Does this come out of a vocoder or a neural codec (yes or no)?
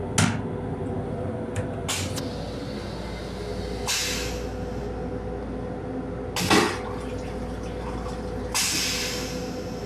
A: no